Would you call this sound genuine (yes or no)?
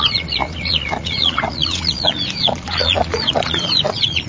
no